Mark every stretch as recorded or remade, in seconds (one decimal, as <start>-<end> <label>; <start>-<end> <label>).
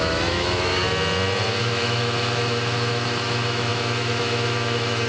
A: 0.0-0.8 remade; 0.8-1.6 recorded; 1.6-5.1 remade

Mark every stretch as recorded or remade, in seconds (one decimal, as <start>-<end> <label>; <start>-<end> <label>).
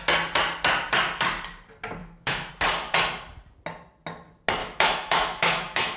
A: 0.0-2.0 recorded; 2.0-2.5 remade; 2.5-4.6 recorded; 4.6-6.0 remade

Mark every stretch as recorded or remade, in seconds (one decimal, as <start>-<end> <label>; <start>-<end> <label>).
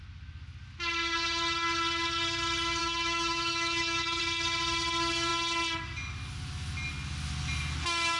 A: 0.0-2.8 recorded; 2.8-4.2 remade; 4.2-8.2 recorded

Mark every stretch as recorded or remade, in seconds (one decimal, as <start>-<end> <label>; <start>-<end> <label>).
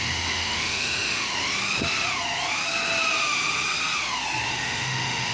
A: 0.0-1.3 remade; 1.3-4.5 recorded; 4.5-5.3 remade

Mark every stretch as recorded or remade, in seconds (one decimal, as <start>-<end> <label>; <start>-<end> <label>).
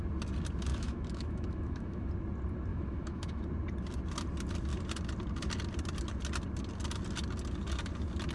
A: 0.0-0.7 recorded; 0.7-2.1 remade; 2.1-2.7 recorded; 2.7-3.4 remade; 3.4-8.3 recorded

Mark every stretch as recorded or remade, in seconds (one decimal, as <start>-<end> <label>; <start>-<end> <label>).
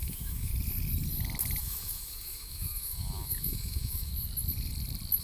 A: 0.0-0.5 remade; 0.5-1.6 recorded; 1.6-4.1 remade; 4.1-5.2 recorded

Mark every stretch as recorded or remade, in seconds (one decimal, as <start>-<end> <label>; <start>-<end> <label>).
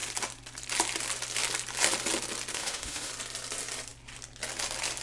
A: 0.0-2.5 recorded; 2.5-3.1 remade; 3.1-5.0 recorded